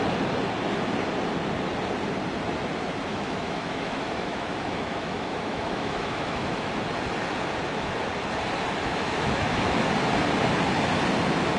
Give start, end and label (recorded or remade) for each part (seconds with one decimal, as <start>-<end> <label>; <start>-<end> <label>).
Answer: 0.0-3.1 recorded; 3.1-6.7 remade; 6.7-8.8 recorded; 8.8-9.9 remade; 9.9-11.6 recorded